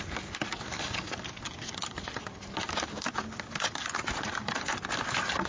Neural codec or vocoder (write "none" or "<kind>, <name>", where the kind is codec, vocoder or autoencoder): none